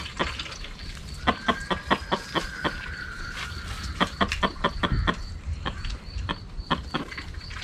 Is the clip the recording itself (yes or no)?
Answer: no